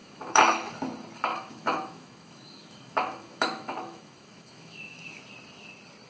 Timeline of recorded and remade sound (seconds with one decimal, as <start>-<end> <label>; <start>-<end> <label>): 0.0-0.7 remade; 0.7-1.3 recorded; 1.3-5.0 remade; 5.0-6.1 recorded